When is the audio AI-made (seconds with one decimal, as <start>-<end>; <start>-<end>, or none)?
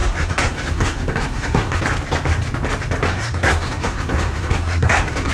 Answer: 0.0-1.8; 3.1-5.3